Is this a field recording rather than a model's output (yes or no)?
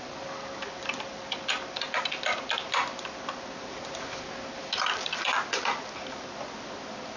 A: yes